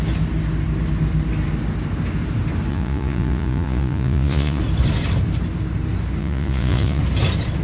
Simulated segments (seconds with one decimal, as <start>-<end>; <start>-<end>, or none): 2.7-4.6; 6.2-7.0